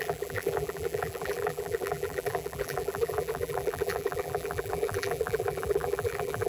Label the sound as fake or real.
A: fake